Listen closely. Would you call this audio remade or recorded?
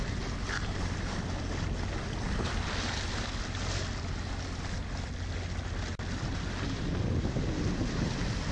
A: recorded